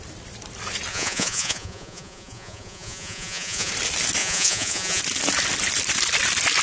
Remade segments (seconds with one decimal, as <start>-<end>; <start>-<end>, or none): 0.9-3.7; 4.2-5.0